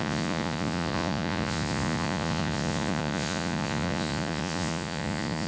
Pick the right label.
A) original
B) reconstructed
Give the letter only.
B